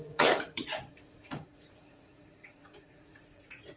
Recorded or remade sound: remade